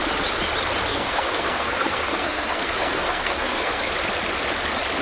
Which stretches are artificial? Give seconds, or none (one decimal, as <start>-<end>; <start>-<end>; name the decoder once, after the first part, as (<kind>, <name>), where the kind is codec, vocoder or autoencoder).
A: 0.9-3.9 (codec, SNAC)